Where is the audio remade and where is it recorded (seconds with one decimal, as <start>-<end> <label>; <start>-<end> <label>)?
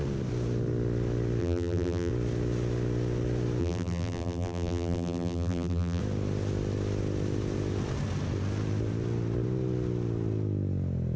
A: 0.0-1.4 recorded; 1.4-2.1 remade; 2.1-3.6 recorded; 3.6-6.0 remade; 6.0-11.2 recorded